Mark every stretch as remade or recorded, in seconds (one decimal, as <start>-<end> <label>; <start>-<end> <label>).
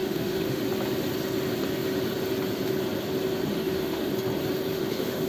0.0-0.6 remade; 0.6-3.5 recorded; 3.5-4.1 remade; 4.1-4.7 recorded; 4.7-5.3 remade